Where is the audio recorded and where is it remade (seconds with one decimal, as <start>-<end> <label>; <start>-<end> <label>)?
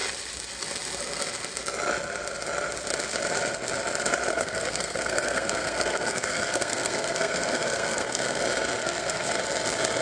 0.0-4.3 recorded; 4.3-8.4 remade; 8.4-8.8 recorded; 8.8-9.4 remade; 9.4-10.0 recorded